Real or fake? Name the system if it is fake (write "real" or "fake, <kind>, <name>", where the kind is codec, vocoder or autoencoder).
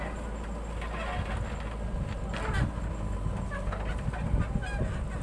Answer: real